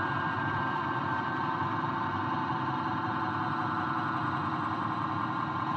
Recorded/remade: remade